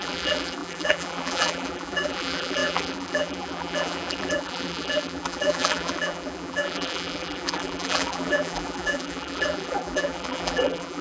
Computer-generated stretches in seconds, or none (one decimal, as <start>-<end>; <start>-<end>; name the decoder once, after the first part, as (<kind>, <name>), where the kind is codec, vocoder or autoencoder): 0.0-11.0 (vocoder, BigVGAN v2)